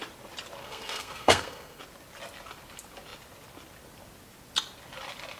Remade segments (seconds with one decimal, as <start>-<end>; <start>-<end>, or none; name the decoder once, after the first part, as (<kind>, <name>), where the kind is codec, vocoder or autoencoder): 0.6-1.8 (codec, SNAC)